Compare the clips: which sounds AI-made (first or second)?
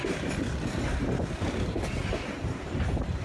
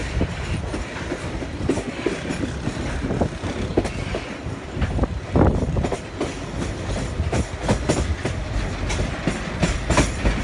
first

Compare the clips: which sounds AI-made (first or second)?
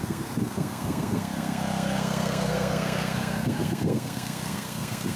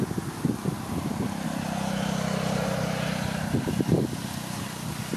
first